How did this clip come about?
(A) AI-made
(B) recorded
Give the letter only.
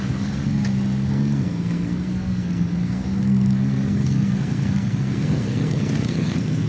A